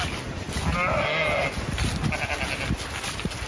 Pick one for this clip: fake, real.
real